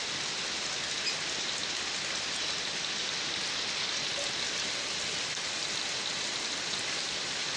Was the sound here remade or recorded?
recorded